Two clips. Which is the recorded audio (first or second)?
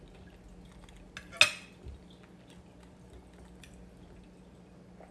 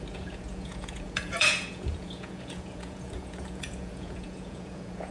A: first